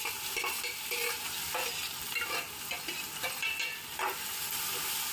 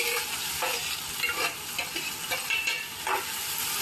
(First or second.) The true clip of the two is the first